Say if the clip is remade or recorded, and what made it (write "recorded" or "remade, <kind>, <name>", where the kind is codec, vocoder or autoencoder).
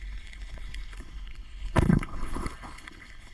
remade, codec, HILCodec